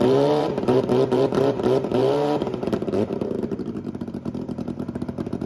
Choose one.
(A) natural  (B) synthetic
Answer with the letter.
B